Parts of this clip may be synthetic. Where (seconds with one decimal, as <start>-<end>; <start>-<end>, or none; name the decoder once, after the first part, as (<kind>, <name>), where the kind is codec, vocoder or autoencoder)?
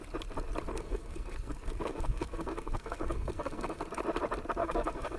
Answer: 0.7-3.8 (codec, SNAC); 4.6-5.2